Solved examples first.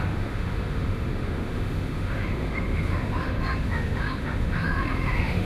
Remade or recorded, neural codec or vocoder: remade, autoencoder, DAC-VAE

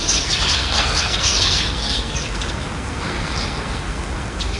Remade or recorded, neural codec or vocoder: remade, codec, SNAC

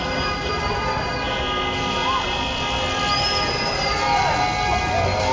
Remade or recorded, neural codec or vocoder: recorded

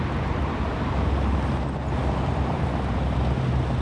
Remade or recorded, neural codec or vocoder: recorded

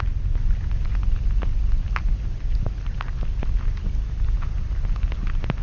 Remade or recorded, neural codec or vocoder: recorded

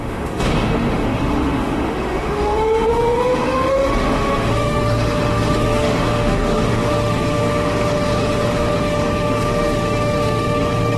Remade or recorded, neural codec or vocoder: remade, autoencoder, DAC-VAE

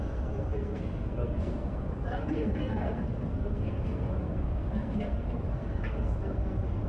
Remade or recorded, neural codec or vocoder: remade, codec, SNAC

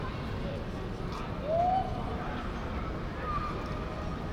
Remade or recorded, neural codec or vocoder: recorded